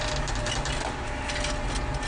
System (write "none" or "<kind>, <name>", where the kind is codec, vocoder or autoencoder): none